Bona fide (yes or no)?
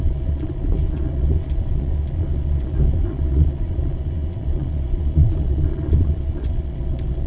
no